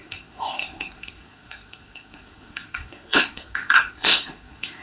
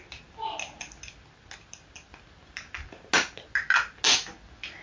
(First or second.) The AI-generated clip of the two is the first